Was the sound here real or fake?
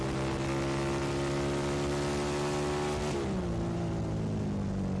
real